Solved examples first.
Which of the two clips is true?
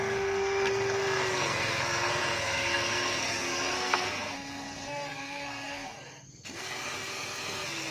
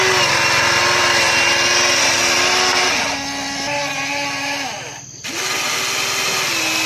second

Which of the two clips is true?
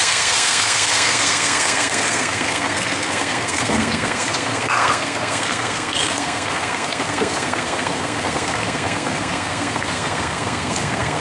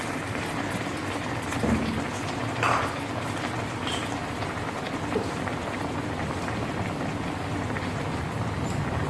second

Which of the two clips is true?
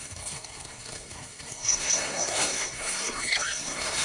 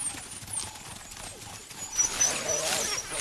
second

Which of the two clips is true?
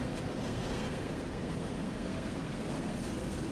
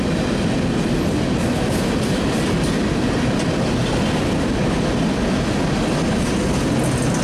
second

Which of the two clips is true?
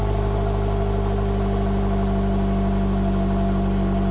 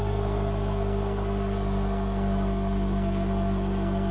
first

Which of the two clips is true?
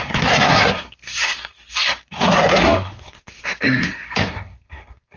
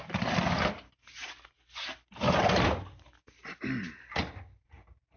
second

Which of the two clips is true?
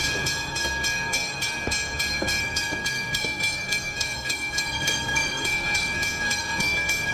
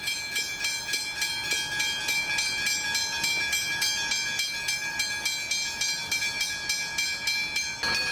second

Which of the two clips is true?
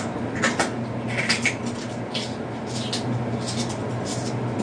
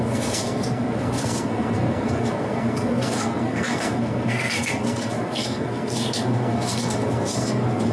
first